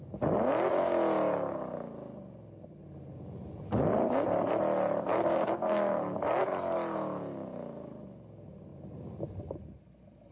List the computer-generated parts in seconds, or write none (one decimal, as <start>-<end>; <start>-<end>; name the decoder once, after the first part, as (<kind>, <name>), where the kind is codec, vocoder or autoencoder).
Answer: 5.1-6.4 (codec, DAC)